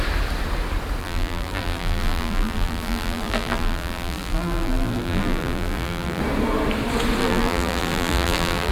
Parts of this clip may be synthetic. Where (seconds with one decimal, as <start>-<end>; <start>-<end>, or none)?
1.0-6.2; 7.2-8.7